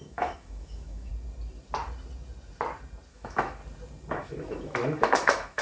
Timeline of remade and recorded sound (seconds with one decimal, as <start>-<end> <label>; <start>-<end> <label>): 0.0-1.1 remade; 1.1-3.1 recorded; 3.1-3.6 remade; 3.6-4.1 recorded; 4.1-5.6 remade